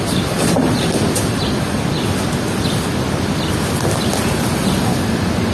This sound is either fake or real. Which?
real